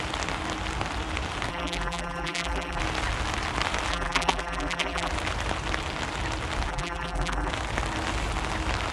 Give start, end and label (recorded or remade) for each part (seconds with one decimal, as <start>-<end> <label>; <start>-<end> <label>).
0.0-1.5 recorded; 1.5-2.8 remade; 2.8-3.9 recorded; 3.9-5.1 remade; 5.1-6.7 recorded; 6.7-7.5 remade; 7.5-8.9 recorded